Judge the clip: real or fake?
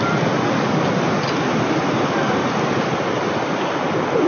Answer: real